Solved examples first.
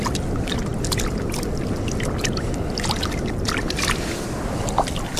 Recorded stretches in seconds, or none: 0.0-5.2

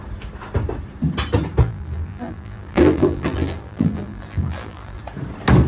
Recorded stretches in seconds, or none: 0.0-1.6; 5.0-5.7

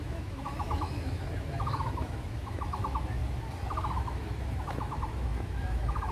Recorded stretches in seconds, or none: 3.2-3.7

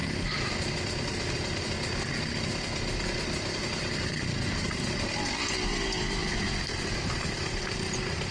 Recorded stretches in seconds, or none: 0.0-6.2; 7.0-8.3